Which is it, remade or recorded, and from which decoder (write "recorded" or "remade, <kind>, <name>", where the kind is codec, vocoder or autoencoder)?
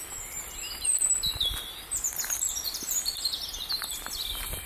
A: recorded